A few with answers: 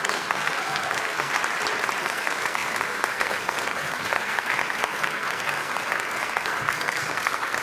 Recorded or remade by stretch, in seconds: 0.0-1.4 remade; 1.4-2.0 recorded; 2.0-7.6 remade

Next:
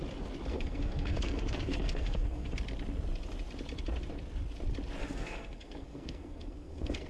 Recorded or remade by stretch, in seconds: 0.0-0.5 recorded; 0.5-2.5 remade; 2.5-5.0 recorded; 5.0-7.1 remade

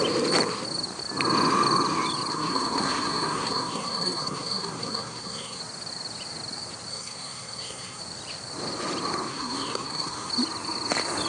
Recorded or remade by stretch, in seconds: 0.0-2.3 recorded; 2.3-5.6 remade; 5.6-6.9 recorded; 6.9-8.0 remade; 8.0-9.3 recorded; 9.3-10.3 remade; 10.3-11.3 recorded

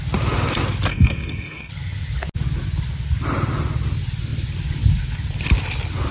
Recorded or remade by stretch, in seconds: 0.0-0.9 recorded; 0.9-1.7 remade; 1.7-6.1 recorded

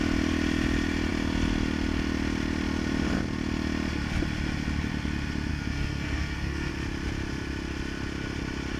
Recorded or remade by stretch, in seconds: 0.0-5.5 recorded; 5.5-6.7 remade; 6.7-8.8 recorded

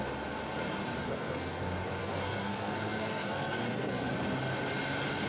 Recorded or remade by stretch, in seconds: 0.0-1.0 recorded; 1.0-1.6 remade; 1.6-2.0 recorded; 2.0-4.1 remade; 4.1-5.3 recorded

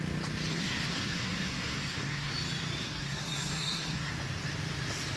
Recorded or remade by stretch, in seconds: 0.0-0.5 recorded; 0.5-2.3 remade; 2.3-2.8 recorded; 2.8-4.1 remade; 4.1-5.2 recorded